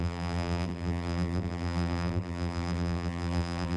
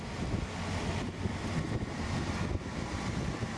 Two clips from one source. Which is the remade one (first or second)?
first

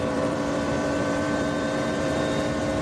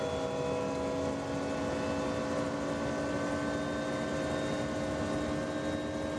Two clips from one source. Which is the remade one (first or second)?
first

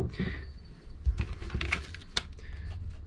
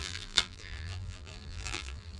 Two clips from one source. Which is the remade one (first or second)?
second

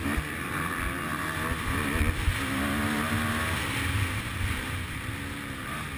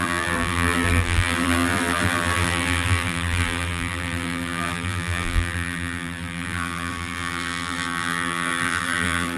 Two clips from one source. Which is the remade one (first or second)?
second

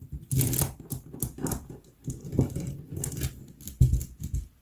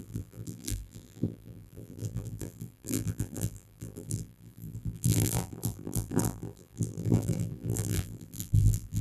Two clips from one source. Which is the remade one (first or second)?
second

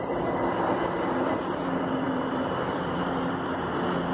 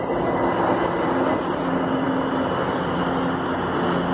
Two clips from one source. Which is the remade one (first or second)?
first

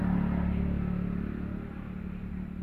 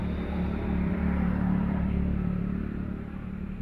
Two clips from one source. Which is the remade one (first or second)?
second